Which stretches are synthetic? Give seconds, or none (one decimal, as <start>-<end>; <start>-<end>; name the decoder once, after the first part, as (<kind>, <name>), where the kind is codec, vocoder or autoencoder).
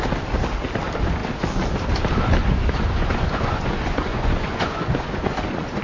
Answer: 2.4-5.8 (vocoder, Vocos)